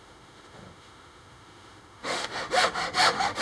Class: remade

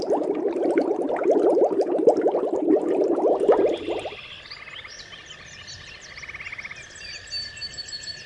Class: recorded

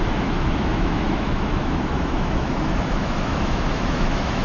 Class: remade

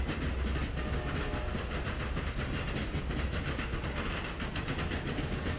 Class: recorded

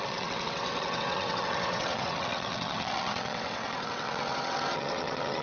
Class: remade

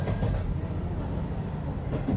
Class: recorded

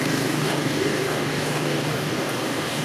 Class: remade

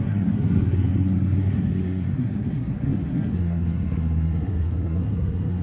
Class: remade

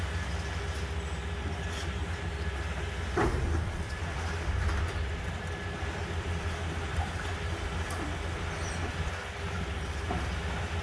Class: recorded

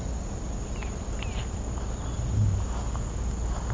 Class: recorded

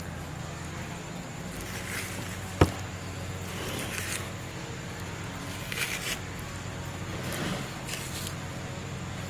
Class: recorded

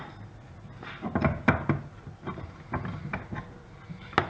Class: recorded